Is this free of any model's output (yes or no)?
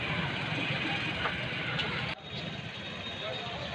yes